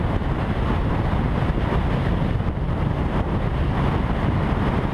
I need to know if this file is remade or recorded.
recorded